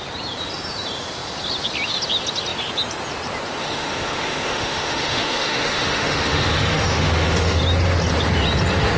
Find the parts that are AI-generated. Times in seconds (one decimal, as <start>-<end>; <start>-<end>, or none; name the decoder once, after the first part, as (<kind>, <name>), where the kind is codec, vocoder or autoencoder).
3.6-7.6 (autoencoder, DAC-VAE)